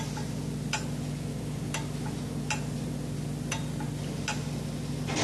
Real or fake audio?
real